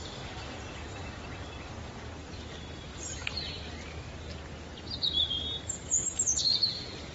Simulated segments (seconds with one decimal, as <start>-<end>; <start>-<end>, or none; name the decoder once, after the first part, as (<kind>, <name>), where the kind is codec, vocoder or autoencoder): 0.0-1.0 (vocoder, BigVGAN v2); 1.6-7.1